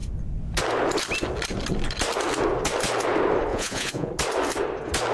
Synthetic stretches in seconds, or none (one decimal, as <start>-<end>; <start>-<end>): 3.5-4.1